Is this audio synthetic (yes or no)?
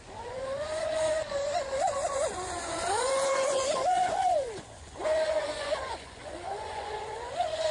yes